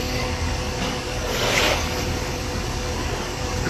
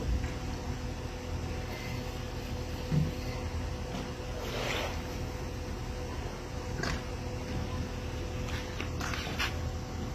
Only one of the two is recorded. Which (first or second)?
second